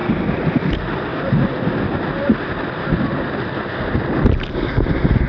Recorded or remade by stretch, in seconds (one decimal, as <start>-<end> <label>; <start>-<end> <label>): 0.0-5.3 recorded

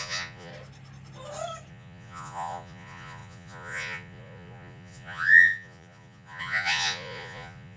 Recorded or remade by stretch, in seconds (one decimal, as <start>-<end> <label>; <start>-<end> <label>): 0.0-0.5 remade; 0.5-1.7 recorded; 1.7-7.8 remade

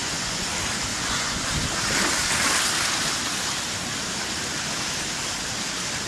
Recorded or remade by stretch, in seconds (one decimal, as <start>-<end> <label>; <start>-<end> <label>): 0.0-0.5 remade; 0.5-0.9 recorded; 0.9-1.5 remade; 1.5-6.1 recorded

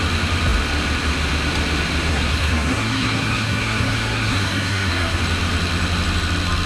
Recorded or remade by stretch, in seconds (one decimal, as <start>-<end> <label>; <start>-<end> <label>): 0.0-2.1 recorded; 2.1-5.2 remade; 5.2-6.7 recorded

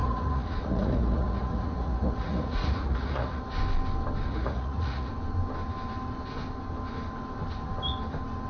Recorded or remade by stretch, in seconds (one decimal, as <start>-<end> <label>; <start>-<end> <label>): 0.0-3.4 remade; 3.4-4.3 recorded; 4.3-5.1 remade; 5.1-8.5 recorded

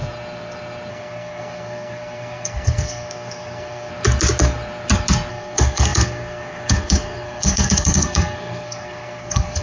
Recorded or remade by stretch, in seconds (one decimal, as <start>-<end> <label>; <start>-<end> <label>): 0.0-0.9 recorded; 0.9-3.9 remade; 3.9-5.3 recorded; 5.3-9.6 remade

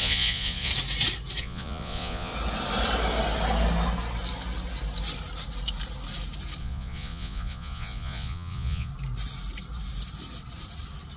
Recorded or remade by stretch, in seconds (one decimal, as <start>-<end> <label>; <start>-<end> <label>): 0.0-0.7 remade; 0.7-1.4 recorded; 1.4-2.3 remade; 2.3-6.6 recorded; 6.6-8.9 remade; 8.9-11.2 recorded